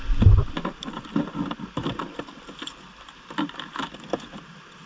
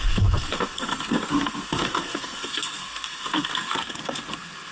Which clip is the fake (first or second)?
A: second